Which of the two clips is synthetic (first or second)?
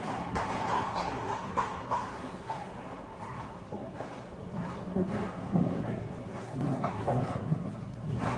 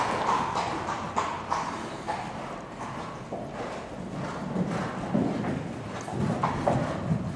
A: first